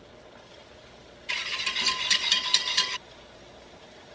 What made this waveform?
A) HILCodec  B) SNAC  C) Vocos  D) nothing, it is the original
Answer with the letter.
D